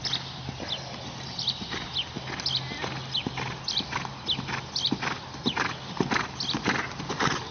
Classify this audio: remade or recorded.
recorded